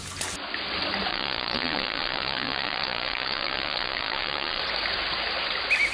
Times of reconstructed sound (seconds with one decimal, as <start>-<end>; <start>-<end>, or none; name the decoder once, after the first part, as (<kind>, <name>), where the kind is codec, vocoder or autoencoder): 1.1-4.6 (vocoder, Vocos)